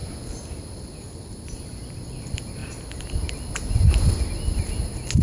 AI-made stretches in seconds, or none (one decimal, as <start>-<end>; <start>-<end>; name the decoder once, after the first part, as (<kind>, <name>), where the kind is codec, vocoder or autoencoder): none